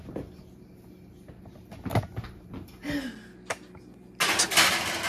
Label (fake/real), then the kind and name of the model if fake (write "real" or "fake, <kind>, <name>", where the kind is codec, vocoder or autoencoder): real